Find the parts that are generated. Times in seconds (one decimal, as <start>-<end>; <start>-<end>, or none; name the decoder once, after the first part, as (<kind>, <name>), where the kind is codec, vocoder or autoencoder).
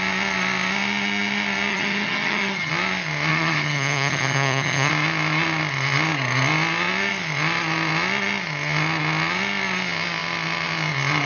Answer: 1.7-2.7 (vocoder, HiFi-GAN); 3.3-4.9